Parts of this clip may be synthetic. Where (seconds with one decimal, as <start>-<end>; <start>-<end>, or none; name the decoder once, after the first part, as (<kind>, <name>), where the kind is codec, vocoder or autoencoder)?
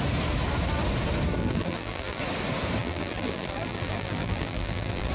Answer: 1.4-2.2 (vocoder, BigVGAN v2); 2.8-5.1